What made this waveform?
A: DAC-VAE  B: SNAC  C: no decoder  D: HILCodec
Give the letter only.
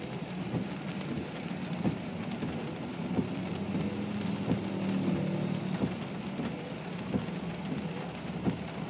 C